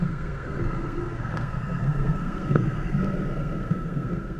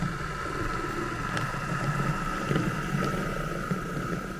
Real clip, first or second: second